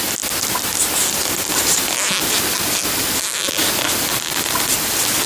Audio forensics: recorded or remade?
recorded